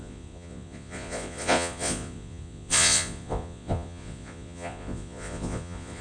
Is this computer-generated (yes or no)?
yes